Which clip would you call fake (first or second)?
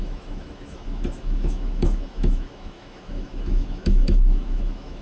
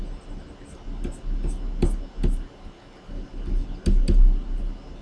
first